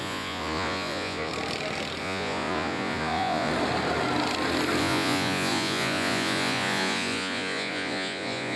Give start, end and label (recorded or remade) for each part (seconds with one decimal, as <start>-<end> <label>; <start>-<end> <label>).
0.0-1.3 remade; 1.3-2.0 recorded; 2.0-3.5 remade; 3.5-4.8 recorded; 4.8-8.6 remade